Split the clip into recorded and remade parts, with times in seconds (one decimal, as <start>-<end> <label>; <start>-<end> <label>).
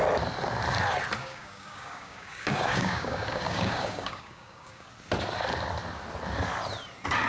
0.0-1.2 recorded; 1.2-4.9 remade; 4.9-7.3 recorded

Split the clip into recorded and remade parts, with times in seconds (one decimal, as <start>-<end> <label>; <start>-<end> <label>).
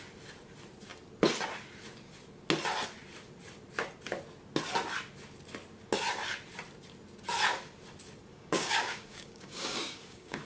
0.0-8.3 recorded; 8.3-10.4 remade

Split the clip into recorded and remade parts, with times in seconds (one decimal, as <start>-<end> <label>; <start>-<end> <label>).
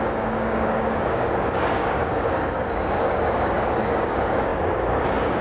0.0-5.4 remade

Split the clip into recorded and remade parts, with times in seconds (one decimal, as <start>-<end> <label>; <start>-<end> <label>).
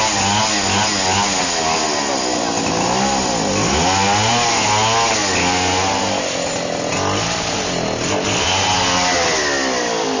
0.0-10.2 recorded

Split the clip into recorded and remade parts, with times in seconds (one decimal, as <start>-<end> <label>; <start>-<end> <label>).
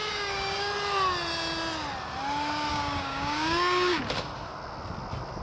0.0-0.7 remade; 0.7-2.7 recorded; 2.7-4.0 remade; 4.0-5.4 recorded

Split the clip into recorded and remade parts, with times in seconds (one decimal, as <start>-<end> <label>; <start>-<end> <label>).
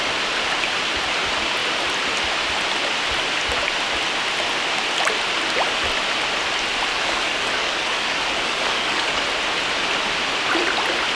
0.0-6.9 recorded; 6.9-9.2 remade; 9.2-11.1 recorded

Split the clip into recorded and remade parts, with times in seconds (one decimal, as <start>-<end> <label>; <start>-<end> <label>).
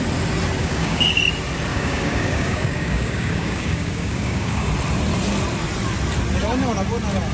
0.0-0.6 recorded; 0.6-1.2 remade; 1.2-1.7 recorded; 1.7-4.7 remade; 4.7-7.3 recorded